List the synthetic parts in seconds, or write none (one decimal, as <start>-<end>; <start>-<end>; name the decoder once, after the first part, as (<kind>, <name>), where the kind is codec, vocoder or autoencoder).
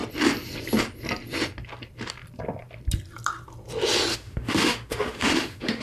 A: 4.1-5.8 (autoencoder, DAC-VAE)